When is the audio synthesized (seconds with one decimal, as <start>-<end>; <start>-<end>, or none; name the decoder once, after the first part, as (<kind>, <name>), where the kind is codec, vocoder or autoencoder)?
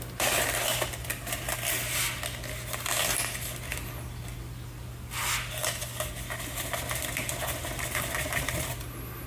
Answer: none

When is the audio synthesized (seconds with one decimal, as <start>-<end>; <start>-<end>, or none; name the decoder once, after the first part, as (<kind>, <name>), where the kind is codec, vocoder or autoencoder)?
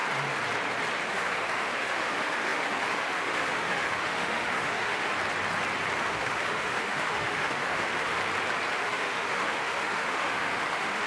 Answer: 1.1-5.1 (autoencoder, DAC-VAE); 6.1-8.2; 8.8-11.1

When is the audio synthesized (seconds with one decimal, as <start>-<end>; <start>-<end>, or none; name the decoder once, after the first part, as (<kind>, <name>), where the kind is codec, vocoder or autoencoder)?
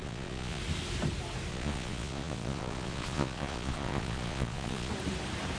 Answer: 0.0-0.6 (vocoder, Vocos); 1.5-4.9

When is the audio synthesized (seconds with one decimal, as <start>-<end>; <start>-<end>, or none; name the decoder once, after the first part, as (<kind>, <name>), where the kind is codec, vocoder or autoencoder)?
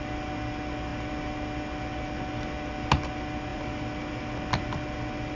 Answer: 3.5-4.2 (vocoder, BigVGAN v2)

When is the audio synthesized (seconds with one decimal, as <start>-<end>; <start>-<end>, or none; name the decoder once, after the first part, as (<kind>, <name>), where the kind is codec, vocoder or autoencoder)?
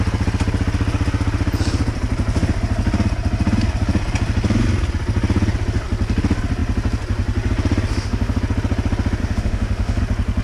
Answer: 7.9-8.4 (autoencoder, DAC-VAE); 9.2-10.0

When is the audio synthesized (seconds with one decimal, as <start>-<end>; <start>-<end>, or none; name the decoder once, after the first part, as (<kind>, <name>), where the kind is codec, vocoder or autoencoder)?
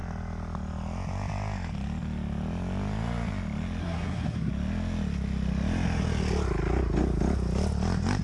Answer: 3.8-4.5 (codec, SNAC)